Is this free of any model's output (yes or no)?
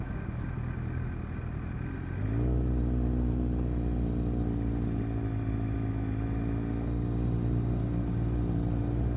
yes